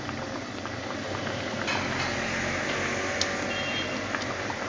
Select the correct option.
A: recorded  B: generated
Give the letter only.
A